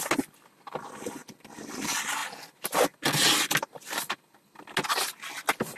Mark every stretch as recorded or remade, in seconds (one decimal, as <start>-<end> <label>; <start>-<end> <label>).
0.0-5.8 recorded